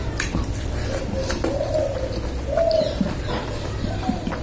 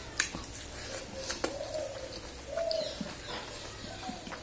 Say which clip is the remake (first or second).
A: first